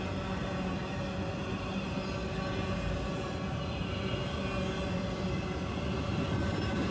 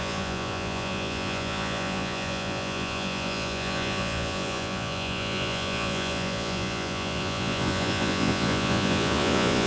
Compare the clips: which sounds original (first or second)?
first